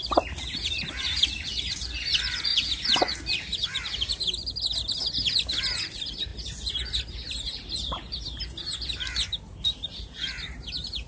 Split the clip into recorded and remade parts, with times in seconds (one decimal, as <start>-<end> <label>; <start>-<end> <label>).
0.0-11.1 remade